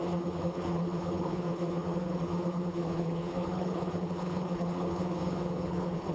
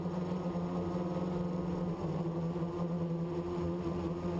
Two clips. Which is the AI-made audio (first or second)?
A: first